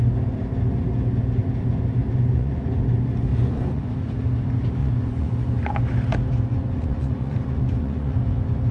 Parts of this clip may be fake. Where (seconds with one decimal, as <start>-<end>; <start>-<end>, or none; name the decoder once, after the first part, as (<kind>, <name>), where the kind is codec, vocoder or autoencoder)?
2.0-2.6 (vocoder, Vocos); 3.3-3.9; 4.8-5.8; 6.5-8.2